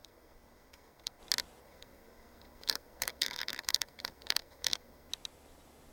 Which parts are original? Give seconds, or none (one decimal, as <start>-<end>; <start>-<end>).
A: 1.2-1.6; 5.1-5.9